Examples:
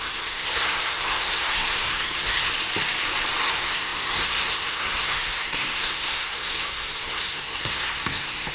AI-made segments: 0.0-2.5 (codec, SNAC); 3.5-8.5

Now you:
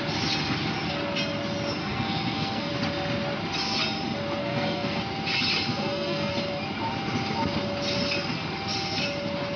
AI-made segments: 1.8-2.7 (codec, SNAC); 4.4-5.0; 5.7-6.3